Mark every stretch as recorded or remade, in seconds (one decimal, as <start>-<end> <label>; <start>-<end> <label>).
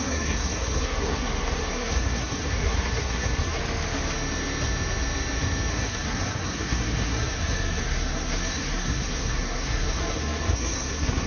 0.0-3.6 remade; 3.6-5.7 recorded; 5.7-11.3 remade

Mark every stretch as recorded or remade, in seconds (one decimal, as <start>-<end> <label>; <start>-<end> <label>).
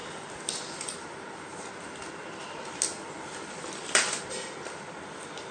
0.0-5.5 recorded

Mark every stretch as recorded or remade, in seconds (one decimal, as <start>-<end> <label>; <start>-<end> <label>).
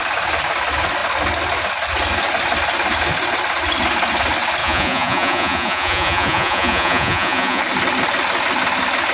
0.0-4.6 recorded; 4.6-7.6 remade; 7.6-9.1 recorded